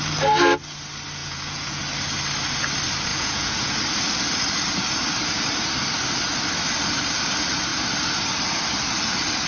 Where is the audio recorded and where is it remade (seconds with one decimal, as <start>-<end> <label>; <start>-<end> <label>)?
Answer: 0.0-1.2 recorded; 1.2-1.8 remade; 1.8-3.1 recorded; 3.1-3.8 remade; 3.8-9.5 recorded